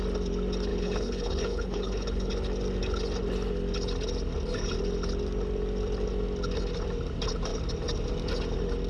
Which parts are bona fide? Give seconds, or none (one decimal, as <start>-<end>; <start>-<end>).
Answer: 0.0-0.7; 2.3-8.9